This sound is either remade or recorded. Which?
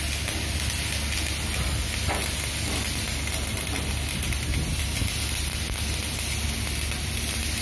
recorded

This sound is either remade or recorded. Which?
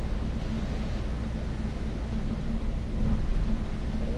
recorded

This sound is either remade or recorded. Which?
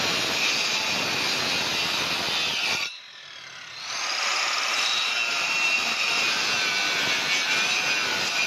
recorded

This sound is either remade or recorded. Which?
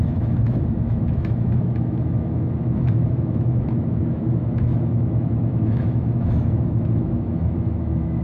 remade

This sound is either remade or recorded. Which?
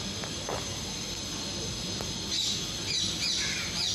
recorded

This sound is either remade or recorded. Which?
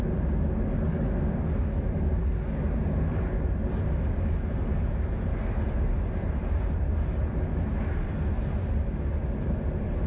recorded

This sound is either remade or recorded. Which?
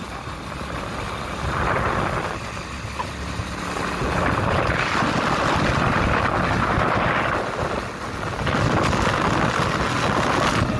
recorded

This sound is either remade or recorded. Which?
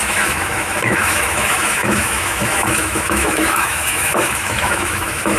remade